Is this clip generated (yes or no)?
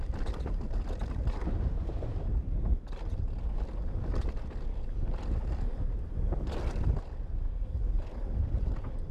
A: no